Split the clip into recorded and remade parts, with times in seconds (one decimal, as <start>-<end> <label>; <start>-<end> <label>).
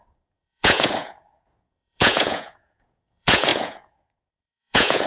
0.0-5.1 remade